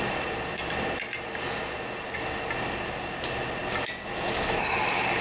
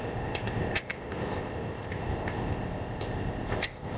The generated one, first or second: second